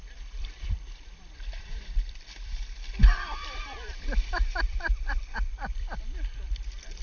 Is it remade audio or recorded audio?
remade